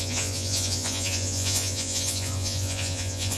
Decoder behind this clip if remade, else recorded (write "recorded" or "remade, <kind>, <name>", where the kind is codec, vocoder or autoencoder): remade, vocoder, Vocos